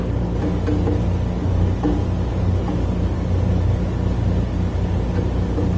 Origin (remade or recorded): recorded